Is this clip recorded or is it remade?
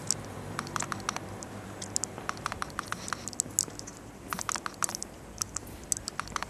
recorded